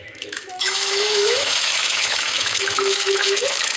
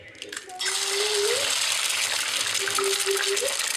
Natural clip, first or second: second